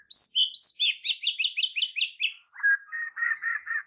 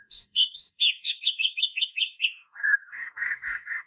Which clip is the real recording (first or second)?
first